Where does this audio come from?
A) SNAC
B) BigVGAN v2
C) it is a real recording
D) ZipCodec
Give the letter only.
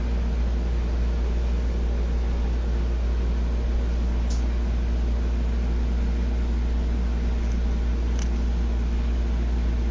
C